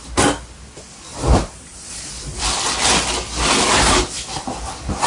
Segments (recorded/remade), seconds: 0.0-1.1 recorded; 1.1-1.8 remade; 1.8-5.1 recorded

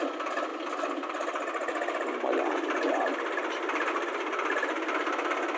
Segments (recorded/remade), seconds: 0.0-5.6 recorded